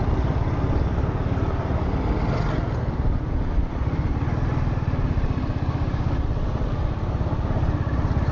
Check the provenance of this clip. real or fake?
real